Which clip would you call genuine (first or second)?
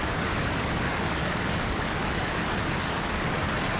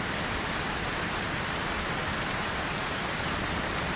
second